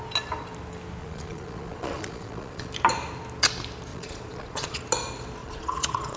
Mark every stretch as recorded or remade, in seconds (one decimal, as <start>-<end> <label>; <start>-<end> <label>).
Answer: 0.0-1.0 recorded; 1.0-2.7 remade; 2.7-3.9 recorded; 3.9-4.8 remade; 4.8-5.4 recorded; 5.4-6.2 remade